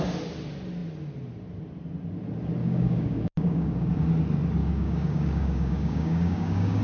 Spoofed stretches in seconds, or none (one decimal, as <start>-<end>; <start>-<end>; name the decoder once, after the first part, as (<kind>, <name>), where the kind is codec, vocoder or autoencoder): 2.6-3.9 (codec, DAC); 4.6-6.8